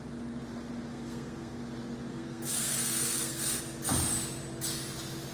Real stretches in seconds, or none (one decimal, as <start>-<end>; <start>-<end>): 0.0-0.9; 1.6-2.1; 3.6-5.3